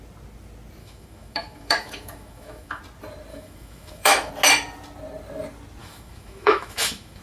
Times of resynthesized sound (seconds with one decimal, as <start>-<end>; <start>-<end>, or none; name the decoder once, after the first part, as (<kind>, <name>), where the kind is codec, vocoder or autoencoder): 0.8-2.8 (autoencoder, DAC-VAE); 3.3-4.3; 5.8-7.2